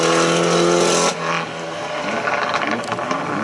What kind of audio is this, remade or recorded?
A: recorded